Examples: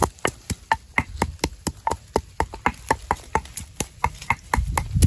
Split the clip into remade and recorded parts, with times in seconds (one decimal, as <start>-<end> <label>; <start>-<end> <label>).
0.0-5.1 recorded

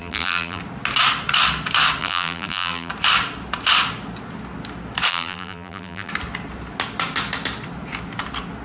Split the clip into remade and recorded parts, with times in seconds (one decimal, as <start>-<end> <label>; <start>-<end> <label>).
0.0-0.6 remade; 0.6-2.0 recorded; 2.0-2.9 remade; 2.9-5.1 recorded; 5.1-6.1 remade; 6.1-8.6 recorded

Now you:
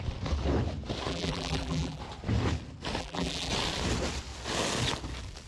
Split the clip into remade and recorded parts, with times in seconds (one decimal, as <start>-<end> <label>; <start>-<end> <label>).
0.0-1.1 recorded; 1.1-2.0 remade; 2.0-3.0 recorded; 3.0-3.5 remade; 3.5-5.5 recorded

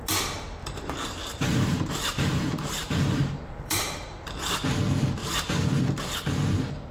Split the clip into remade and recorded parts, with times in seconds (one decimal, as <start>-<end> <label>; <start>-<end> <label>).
0.0-0.6 recorded; 0.6-4.5 remade; 4.5-5.2 recorded; 5.2-5.8 remade; 5.8-6.9 recorded

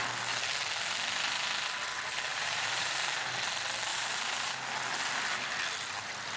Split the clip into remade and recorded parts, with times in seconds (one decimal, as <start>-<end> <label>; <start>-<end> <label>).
0.0-2.3 recorded; 2.3-3.3 remade; 3.3-3.9 recorded; 3.9-4.7 remade; 4.7-6.4 recorded